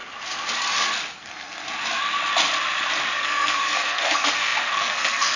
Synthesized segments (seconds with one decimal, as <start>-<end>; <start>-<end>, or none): 1.2-1.6; 3.2-5.4